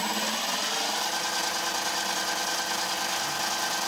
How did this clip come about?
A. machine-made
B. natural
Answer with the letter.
B